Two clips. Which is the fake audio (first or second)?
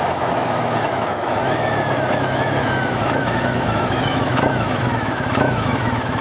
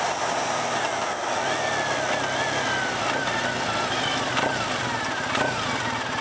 first